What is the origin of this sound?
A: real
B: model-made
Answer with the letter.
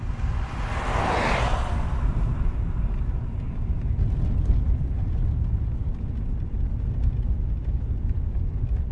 A